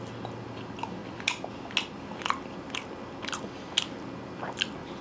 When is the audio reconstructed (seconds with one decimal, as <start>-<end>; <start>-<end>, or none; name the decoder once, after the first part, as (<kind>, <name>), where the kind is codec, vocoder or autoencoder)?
none